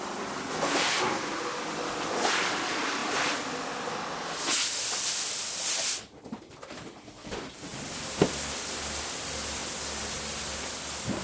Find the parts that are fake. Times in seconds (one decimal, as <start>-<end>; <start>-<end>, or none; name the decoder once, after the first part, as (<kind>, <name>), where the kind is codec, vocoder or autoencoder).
3.0-3.5 (vocoder, BigVGAN v2)